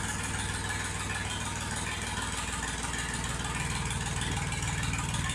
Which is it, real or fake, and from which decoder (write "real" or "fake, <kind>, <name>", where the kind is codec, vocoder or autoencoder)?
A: real